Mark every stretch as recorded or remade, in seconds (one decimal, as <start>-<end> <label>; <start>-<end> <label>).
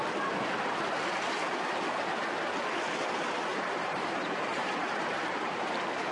0.0-3.5 recorded; 3.5-6.1 remade